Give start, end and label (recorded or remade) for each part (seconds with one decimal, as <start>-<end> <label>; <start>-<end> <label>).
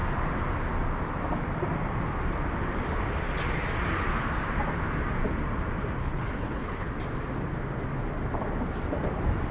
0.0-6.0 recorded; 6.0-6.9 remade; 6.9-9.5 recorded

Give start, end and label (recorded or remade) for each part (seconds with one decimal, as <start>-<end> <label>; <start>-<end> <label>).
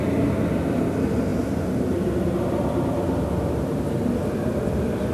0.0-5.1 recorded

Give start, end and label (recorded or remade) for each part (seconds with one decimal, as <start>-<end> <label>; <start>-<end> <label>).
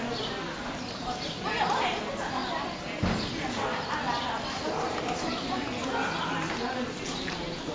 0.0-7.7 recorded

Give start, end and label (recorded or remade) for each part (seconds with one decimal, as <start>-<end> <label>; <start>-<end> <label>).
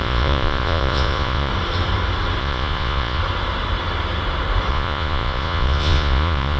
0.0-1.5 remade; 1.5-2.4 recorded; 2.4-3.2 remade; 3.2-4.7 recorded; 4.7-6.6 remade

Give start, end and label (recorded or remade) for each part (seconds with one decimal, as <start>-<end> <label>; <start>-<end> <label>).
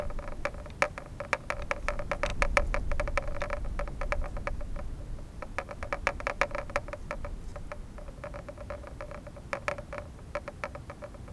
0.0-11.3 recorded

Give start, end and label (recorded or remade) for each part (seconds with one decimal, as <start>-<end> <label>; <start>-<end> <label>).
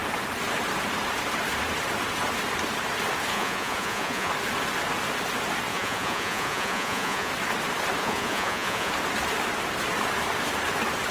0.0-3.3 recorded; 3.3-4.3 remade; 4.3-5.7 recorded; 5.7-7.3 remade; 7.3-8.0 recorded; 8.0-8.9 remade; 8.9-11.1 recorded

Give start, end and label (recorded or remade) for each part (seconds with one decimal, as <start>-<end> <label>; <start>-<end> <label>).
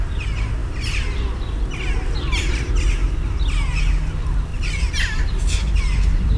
0.0-4.5 recorded; 4.5-5.8 remade; 5.8-6.4 recorded